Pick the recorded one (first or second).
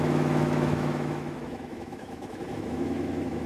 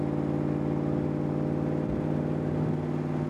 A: second